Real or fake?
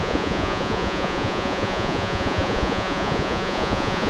fake